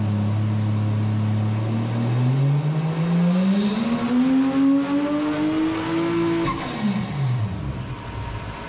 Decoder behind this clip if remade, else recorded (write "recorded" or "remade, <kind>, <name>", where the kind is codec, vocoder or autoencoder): recorded